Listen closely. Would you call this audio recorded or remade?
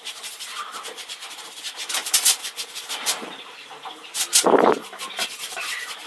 remade